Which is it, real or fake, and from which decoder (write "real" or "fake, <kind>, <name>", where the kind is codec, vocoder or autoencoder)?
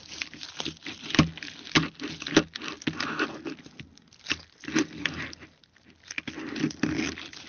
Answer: real